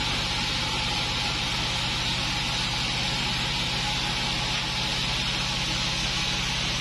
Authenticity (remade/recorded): recorded